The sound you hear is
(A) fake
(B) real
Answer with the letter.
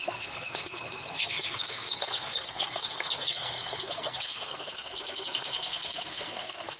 A